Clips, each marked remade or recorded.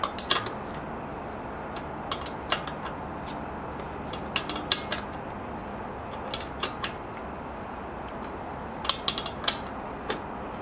recorded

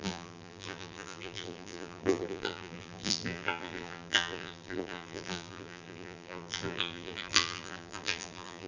remade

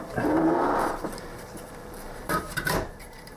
remade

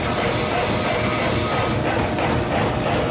recorded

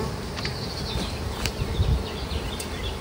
remade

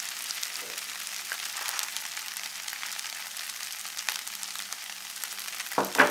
remade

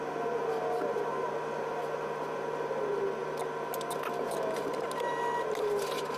recorded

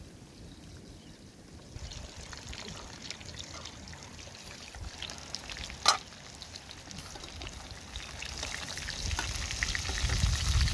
recorded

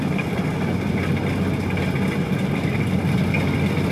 recorded